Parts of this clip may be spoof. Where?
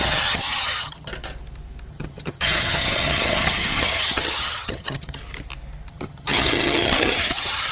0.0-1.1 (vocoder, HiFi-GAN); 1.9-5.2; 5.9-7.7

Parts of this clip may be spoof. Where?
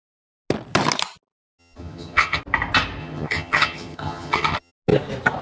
1.6-2.4 (vocoder, HiFi-GAN); 3.0-4.7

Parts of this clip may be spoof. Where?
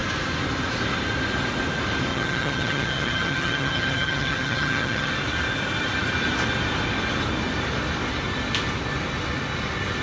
2.1-5.1 (vocoder, HiFi-GAN)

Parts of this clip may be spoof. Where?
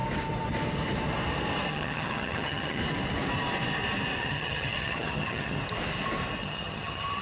1.7-2.8 (vocoder, HiFi-GAN); 4.2-5.6; 6.4-7.2